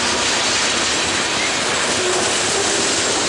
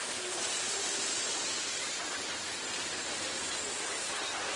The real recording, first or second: first